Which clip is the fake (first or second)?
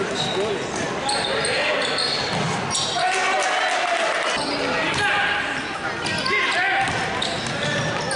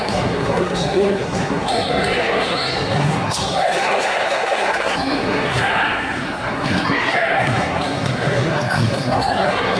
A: second